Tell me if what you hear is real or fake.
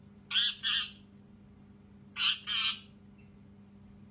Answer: real